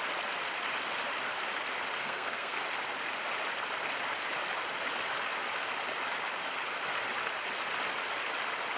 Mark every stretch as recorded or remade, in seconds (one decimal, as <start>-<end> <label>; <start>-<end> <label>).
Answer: 0.0-2.0 recorded; 2.0-2.6 remade; 2.6-8.8 recorded